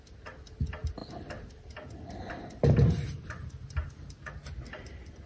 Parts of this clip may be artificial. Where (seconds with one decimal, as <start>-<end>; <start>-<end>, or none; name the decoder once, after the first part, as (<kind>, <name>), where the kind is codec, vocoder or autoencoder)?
1.0-4.2 (vocoder, BigVGAN v2)